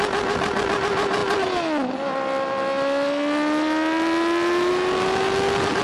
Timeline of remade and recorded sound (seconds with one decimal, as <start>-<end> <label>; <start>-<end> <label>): 0.0-5.8 recorded